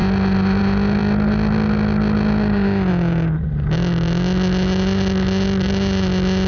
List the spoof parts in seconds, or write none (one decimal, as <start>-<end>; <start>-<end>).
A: none